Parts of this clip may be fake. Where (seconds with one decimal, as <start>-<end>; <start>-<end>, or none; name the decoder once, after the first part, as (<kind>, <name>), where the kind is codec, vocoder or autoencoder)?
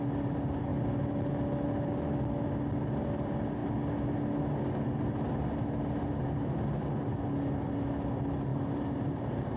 8.5-9.6 (vocoder, BigVGAN v2)